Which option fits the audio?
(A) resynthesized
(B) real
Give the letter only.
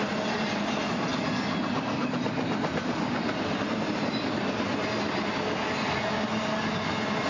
B